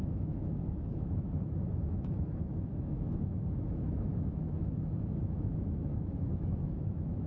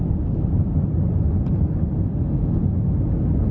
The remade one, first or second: first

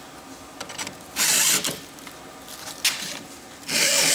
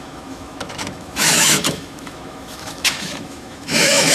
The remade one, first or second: second